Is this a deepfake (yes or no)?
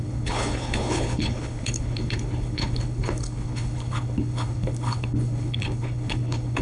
yes